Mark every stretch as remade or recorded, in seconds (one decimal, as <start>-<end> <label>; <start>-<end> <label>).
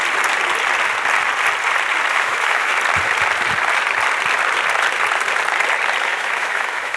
0.0-2.1 recorded; 2.1-2.7 remade; 2.7-6.0 recorded; 6.0-7.0 remade